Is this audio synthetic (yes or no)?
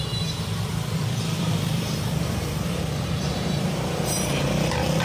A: yes